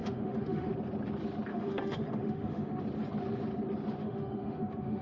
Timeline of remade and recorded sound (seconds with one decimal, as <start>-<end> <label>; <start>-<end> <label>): 0.0-0.7 remade; 0.7-1.5 recorded; 1.5-2.8 remade; 2.8-4.0 recorded; 4.0-5.0 remade